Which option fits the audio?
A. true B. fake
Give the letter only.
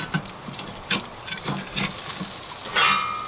A